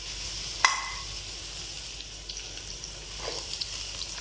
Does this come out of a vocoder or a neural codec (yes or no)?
no